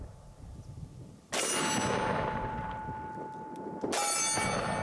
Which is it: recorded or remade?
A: recorded